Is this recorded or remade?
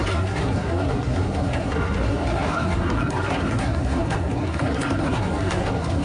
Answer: remade